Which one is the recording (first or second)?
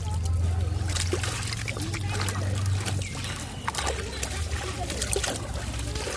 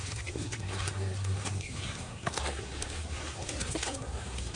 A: first